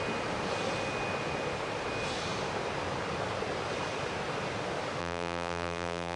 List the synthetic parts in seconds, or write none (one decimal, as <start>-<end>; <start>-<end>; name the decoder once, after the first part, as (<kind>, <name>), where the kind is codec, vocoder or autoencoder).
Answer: 5.0-6.2 (vocoder, BigVGAN v2)